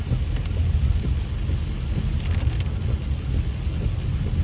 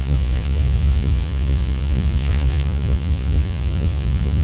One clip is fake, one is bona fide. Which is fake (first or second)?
second